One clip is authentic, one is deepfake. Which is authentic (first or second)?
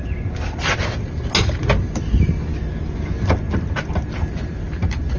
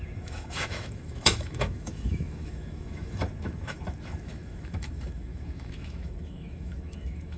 first